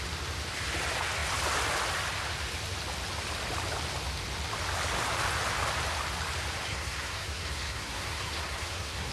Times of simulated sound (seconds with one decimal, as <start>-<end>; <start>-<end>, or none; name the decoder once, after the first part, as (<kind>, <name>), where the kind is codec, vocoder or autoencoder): 6.7-9.1 (codec, SNAC)